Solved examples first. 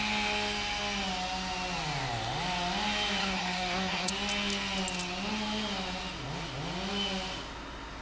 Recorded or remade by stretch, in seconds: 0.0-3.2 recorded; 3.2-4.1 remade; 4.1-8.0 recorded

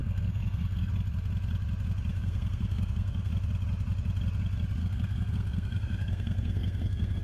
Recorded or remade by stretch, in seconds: 0.0-0.9 remade; 0.9-2.1 recorded; 2.1-3.3 remade; 3.3-4.8 recorded; 4.8-7.2 remade